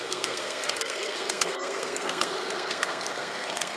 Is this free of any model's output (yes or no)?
no